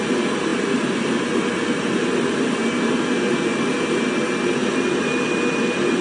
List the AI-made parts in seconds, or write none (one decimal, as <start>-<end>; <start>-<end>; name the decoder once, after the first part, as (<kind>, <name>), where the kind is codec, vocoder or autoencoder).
none